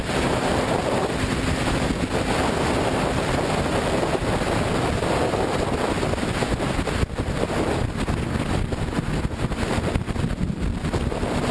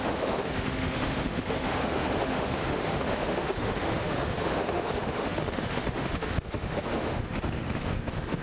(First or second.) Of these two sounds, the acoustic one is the first